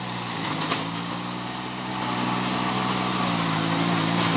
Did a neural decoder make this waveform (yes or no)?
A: no